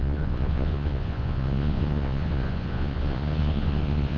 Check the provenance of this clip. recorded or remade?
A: remade